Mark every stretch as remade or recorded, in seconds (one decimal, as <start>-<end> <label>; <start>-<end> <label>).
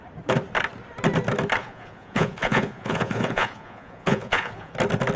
0.0-1.6 recorded; 1.6-4.7 remade; 4.7-5.2 recorded